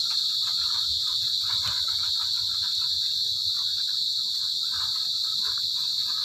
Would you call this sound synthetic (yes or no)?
no